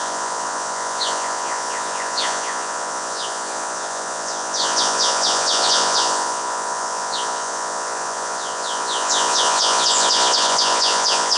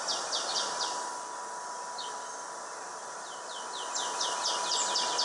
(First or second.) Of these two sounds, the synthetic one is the first